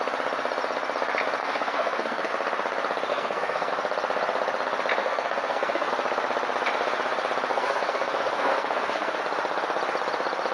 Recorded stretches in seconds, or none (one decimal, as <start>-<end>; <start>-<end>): 0.0-1.4; 2.3-3.1; 3.7-5.0; 5.9-7.5; 9.2-10.5